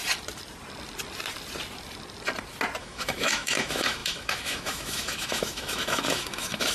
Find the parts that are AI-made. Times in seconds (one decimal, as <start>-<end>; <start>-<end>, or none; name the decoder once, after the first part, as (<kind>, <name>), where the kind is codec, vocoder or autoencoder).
2.8-6.7 (autoencoder, DAC-VAE)